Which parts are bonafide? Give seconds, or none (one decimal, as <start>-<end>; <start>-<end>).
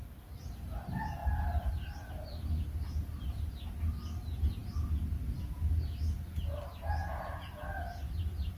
0.0-8.6